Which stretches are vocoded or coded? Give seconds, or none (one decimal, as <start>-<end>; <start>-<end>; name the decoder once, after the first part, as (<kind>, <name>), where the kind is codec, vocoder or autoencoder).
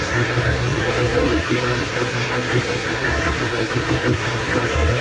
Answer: 0.0-5.0 (codec, SNAC)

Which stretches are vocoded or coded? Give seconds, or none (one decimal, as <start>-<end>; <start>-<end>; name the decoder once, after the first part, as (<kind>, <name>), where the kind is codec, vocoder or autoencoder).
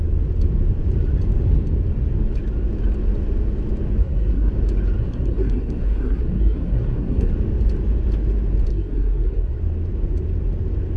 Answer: 4.0-4.5 (codec, SNAC); 5.0-7.3; 8.7-9.6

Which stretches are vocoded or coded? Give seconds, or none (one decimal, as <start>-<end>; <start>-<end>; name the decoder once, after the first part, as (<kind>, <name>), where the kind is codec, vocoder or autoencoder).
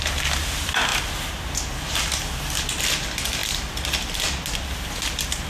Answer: none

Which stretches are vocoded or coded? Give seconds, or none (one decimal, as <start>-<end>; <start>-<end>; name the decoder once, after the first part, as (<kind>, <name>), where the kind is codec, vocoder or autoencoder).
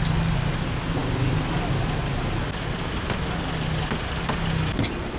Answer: none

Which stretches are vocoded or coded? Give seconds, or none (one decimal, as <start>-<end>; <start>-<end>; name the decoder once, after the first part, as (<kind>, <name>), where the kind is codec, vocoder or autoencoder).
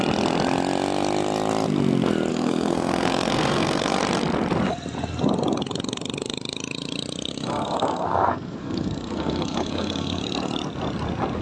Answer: 2.3-4.0 (codec, SNAC); 7.3-10.2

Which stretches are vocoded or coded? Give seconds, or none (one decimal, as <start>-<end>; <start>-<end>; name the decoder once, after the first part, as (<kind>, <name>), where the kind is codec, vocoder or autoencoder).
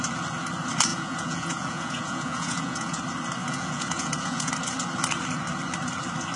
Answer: 0.9-3.0 (vocoder, Vocos); 3.4-4.5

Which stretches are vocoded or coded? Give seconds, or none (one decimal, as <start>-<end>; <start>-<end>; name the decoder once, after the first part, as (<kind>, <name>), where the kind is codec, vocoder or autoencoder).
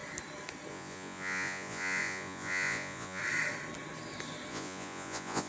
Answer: 0.7-3.2 (vocoder, Vocos); 4.5-5.5